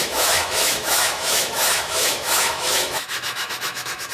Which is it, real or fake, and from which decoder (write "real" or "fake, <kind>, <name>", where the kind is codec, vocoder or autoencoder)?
fake, autoencoder, DAC-VAE